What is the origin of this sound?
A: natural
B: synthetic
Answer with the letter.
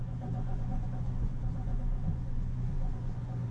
B